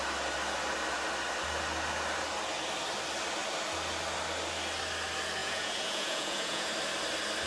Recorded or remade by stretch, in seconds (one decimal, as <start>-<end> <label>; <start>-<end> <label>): 0.0-5.4 recorded; 5.4-6.7 remade; 6.7-7.5 recorded